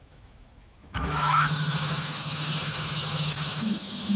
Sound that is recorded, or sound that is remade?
remade